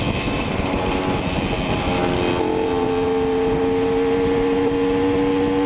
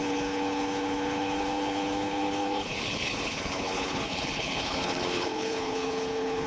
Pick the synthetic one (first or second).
second